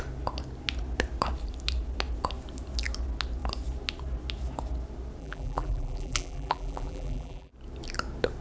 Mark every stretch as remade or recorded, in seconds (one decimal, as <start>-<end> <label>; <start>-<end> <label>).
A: 0.0-5.2 recorded; 5.2-7.5 remade; 7.5-8.4 recorded